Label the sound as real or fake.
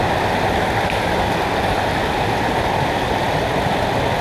real